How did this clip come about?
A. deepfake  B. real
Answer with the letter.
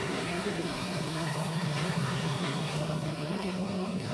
A